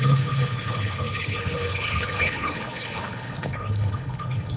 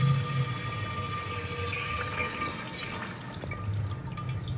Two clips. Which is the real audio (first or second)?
second